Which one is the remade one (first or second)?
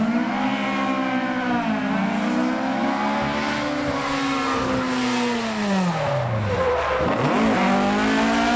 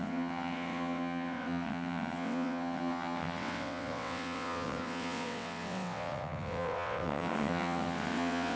second